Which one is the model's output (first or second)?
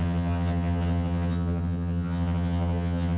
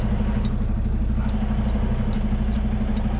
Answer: first